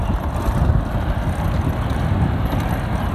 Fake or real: real